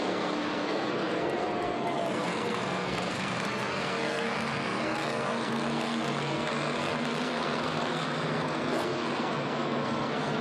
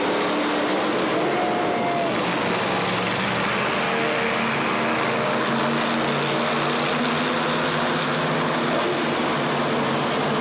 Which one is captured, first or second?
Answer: second